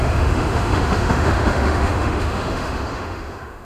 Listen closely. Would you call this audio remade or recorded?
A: remade